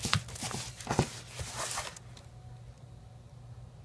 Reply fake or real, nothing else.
real